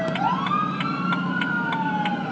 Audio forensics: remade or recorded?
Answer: recorded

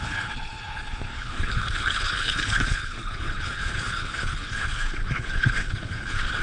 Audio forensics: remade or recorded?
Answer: remade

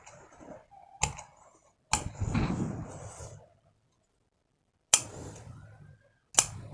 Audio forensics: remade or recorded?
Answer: recorded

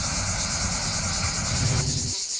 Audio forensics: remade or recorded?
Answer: recorded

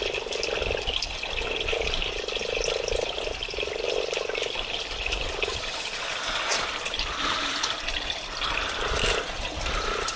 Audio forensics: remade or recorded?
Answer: recorded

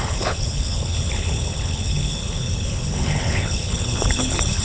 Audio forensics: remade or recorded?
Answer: remade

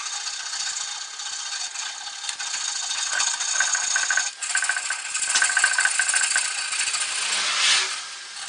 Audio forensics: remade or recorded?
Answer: recorded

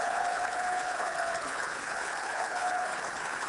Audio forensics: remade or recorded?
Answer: remade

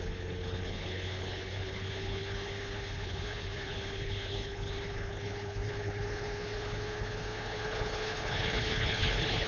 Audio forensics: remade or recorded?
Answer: remade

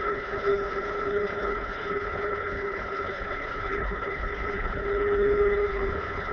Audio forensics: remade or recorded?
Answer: remade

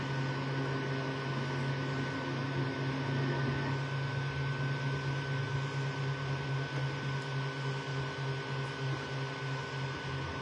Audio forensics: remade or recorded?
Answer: recorded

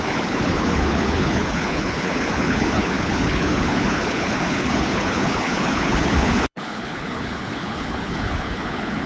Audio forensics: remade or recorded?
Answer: remade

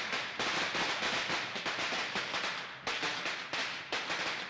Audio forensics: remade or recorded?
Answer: recorded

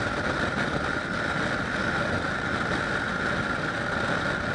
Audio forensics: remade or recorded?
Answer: recorded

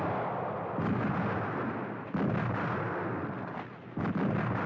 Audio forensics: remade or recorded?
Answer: recorded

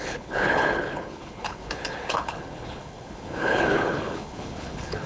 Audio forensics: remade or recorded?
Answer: remade